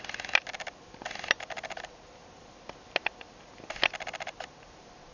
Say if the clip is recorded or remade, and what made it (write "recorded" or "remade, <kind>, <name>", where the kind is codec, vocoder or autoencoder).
recorded